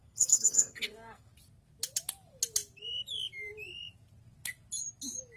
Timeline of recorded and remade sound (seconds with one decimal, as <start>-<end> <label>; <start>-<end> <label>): 0.0-1.3 remade; 1.3-5.4 recorded